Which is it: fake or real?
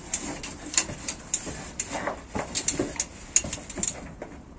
real